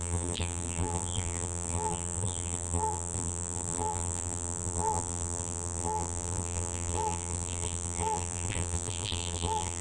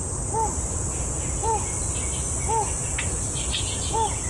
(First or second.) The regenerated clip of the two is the first